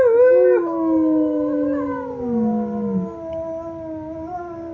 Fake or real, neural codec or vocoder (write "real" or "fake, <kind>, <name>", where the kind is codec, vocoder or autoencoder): real